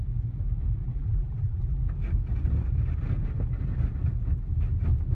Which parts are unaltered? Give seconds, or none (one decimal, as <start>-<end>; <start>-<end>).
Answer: 0.0-0.8; 1.8-5.1

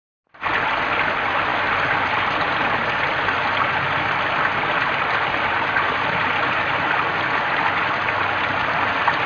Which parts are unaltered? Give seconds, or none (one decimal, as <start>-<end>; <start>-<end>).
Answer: 0.0-9.3

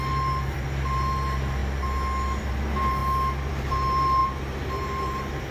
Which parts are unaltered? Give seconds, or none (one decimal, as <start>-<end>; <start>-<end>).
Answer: 1.6-2.4; 3.0-3.5

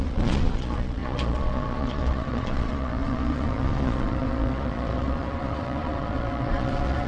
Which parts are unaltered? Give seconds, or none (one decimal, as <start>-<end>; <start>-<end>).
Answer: none

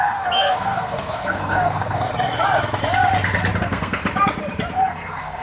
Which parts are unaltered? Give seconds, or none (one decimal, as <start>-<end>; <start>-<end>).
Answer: 2.1-3.6; 4.0-4.7

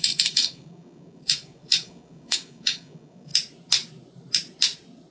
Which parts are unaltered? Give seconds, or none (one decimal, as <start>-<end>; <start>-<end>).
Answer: 3.3-5.1